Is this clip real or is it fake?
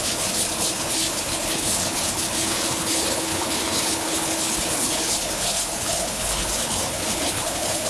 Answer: fake